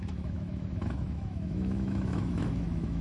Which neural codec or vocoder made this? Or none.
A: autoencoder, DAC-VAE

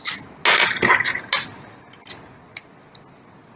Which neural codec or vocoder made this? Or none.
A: none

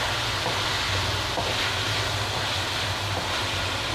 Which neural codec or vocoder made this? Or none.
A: none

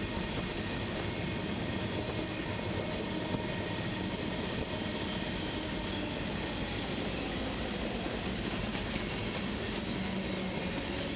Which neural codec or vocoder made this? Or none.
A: none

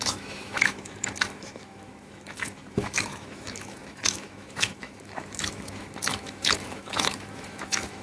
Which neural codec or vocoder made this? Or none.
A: autoencoder, DAC-VAE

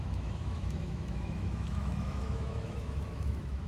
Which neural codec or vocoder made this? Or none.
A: autoencoder, DAC-VAE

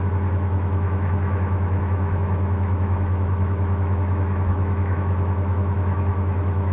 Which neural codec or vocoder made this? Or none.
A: autoencoder, DAC-VAE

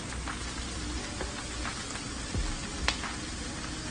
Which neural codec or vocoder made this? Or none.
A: none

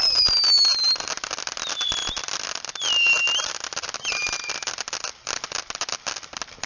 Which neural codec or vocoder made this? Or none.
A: none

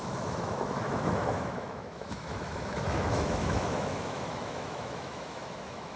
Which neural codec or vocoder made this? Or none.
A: autoencoder, DAC-VAE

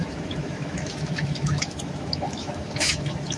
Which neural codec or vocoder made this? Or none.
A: autoencoder, DAC-VAE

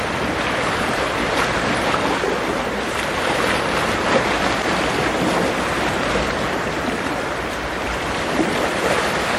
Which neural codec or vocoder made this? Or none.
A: none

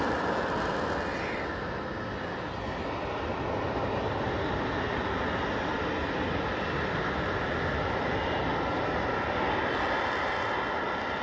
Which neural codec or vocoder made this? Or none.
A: none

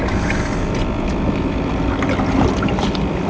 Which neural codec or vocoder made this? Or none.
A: none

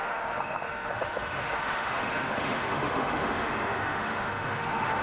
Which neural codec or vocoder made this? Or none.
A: autoencoder, DAC-VAE